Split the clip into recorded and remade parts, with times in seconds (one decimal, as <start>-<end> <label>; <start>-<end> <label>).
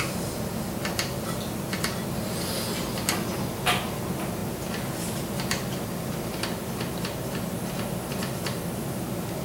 0.0-9.4 recorded